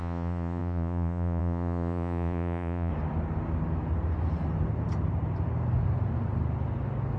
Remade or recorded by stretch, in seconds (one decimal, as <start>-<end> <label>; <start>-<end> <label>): 0.0-2.9 remade; 2.9-7.2 recorded